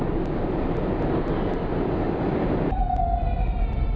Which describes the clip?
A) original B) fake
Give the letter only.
A